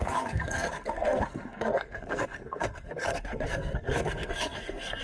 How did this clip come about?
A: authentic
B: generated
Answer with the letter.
B